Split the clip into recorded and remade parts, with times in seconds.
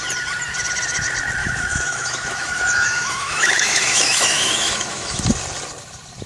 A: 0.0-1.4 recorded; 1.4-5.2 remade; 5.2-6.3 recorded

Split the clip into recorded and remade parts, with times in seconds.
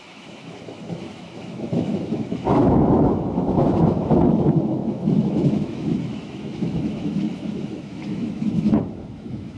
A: 0.0-9.6 remade